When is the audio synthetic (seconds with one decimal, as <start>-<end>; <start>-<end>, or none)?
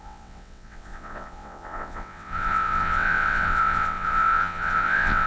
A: 0.0-5.3